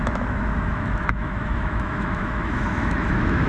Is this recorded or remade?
remade